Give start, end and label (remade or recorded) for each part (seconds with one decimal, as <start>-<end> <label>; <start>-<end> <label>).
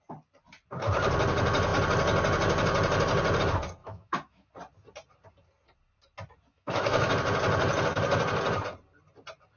0.0-3.8 recorded; 3.8-4.5 remade; 4.5-6.5 recorded; 6.5-7.1 remade; 7.1-9.6 recorded